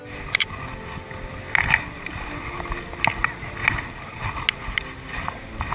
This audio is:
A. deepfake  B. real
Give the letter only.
B